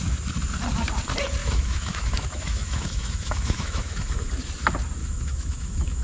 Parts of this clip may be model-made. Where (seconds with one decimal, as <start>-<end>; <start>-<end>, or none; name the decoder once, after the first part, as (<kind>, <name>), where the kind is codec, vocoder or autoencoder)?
1.4-4.3 (autoencoder, DAC-VAE); 5.0-6.0